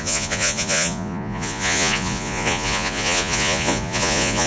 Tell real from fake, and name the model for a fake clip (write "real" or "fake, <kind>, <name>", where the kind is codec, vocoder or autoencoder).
fake, vocoder, Vocos